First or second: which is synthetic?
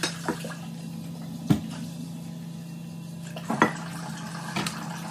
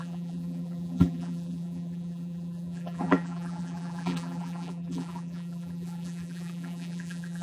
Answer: second